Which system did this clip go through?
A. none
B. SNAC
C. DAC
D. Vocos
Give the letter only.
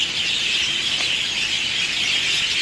A